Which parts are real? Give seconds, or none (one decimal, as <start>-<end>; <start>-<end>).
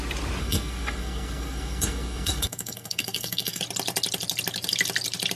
0.0-0.4; 3.6-5.4